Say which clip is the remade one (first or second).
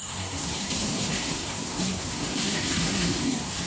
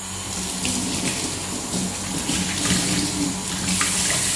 first